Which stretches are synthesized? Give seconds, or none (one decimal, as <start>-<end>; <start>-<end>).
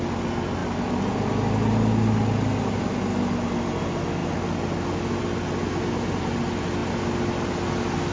none